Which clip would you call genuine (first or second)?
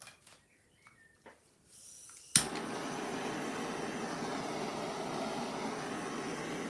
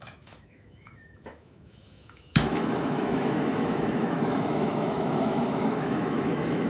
first